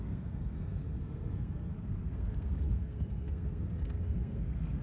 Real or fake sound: fake